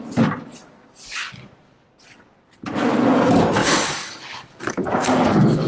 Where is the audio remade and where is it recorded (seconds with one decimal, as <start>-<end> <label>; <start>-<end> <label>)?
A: 0.0-3.6 recorded; 3.6-5.7 remade